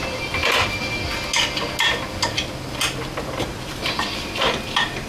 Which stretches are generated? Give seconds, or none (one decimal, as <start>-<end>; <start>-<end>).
0.0-0.4; 3.2-5.1